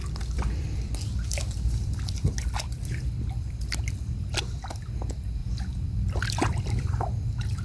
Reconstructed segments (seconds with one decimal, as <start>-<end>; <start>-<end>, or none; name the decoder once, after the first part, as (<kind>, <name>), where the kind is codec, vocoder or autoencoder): 0.0-4.4 (vocoder, BigVGAN v2); 5.4-6.9